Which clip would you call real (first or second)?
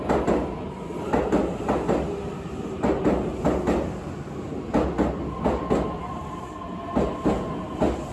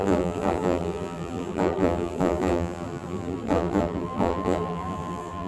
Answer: first